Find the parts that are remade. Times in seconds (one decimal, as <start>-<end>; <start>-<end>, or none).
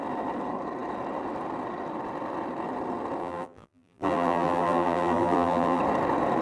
3.2-5.8